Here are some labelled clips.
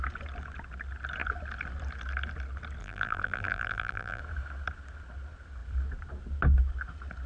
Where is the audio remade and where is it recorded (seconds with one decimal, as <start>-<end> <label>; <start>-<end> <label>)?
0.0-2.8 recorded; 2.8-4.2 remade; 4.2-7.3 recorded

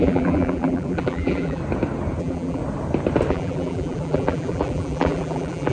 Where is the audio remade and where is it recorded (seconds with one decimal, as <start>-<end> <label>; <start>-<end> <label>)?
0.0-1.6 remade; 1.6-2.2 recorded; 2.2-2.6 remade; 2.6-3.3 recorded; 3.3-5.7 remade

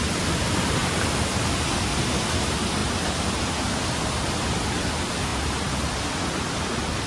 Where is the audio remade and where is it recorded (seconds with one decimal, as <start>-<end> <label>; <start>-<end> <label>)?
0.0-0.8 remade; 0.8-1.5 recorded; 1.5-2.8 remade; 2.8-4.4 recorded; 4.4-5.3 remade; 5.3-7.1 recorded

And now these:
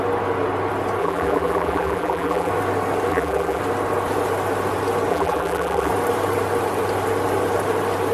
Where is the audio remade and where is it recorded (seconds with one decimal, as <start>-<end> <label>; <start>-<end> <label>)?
0.0-1.0 recorded; 1.0-2.5 remade; 2.5-3.1 recorded; 3.1-3.6 remade; 3.6-5.1 recorded; 5.1-5.9 remade; 5.9-8.1 recorded

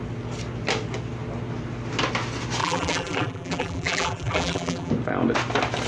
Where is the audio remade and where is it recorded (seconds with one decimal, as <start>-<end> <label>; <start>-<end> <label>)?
0.0-2.6 recorded; 2.6-4.9 remade; 4.9-5.9 recorded